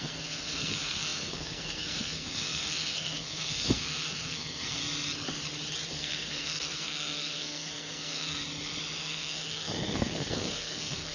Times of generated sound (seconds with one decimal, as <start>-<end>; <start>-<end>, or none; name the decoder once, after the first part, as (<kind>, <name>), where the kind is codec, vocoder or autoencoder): 0.0-4.8 (codec, SNAC); 5.9-8.4; 9.0-11.1